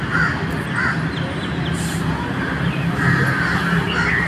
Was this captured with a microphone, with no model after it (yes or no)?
yes